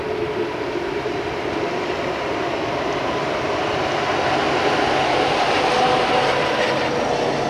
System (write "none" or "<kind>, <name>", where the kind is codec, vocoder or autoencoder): none